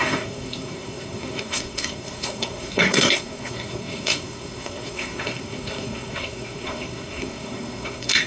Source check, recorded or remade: remade